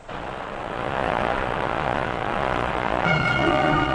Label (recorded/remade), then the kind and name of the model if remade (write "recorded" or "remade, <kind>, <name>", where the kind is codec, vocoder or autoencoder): remade, vocoder, Vocos